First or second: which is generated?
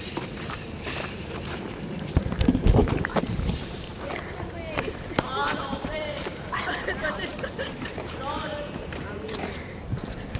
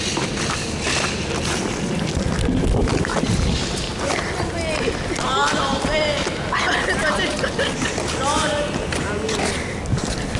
first